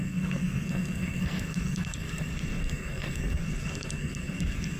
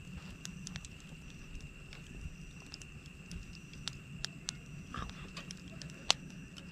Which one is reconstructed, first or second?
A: first